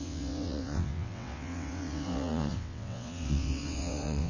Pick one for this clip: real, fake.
fake